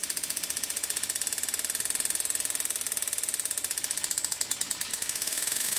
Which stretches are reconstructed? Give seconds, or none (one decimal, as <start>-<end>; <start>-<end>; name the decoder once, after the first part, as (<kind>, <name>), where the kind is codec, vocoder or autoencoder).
4.9-5.8 (autoencoder, DAC-VAE)